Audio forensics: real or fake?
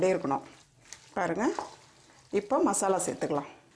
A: real